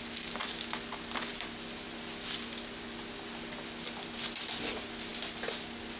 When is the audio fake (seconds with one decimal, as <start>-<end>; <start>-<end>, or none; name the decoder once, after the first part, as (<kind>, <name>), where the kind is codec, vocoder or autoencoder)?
none